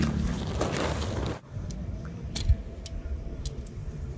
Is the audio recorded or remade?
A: recorded